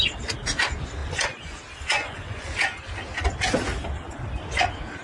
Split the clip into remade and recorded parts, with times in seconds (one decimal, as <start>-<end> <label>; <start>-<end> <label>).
0.0-1.0 recorded; 1.0-1.6 remade; 1.6-2.0 recorded; 2.0-2.6 remade; 2.6-5.0 recorded

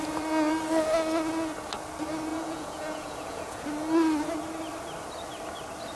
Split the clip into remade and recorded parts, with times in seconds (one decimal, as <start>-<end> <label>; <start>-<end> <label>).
0.0-2.3 recorded; 2.3-3.6 remade; 3.6-6.0 recorded

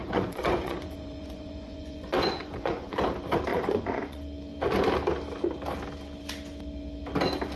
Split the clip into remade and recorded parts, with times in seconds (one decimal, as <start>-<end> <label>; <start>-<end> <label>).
0.0-3.0 remade; 3.0-3.5 recorded; 3.5-4.2 remade; 4.2-7.6 recorded

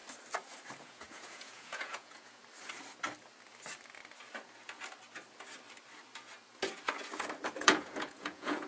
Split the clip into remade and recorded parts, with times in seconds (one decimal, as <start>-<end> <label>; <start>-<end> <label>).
0.0-0.8 recorded; 0.8-2.4 remade; 2.4-7.6 recorded; 7.6-8.7 remade